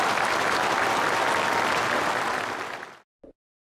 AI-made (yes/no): no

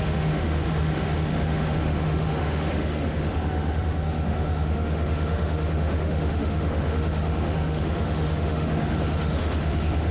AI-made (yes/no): yes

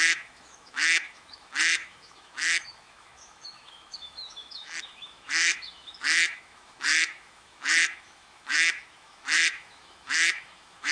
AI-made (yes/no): yes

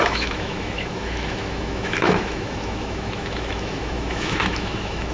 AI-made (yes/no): yes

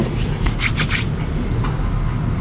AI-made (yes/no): no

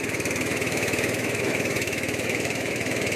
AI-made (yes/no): yes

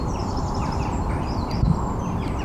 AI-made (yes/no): no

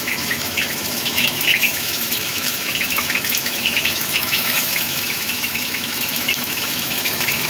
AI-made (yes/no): yes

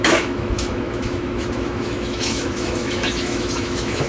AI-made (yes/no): yes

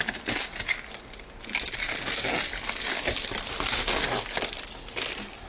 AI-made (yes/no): no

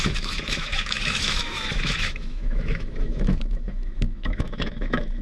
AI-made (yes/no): yes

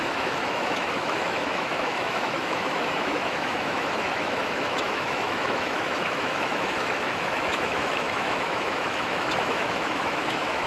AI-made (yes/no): yes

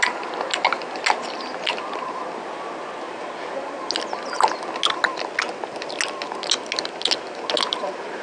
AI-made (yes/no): no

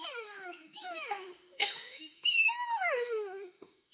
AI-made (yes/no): yes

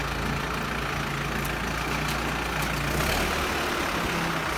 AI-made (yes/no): no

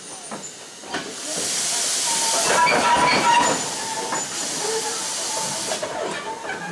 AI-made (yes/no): no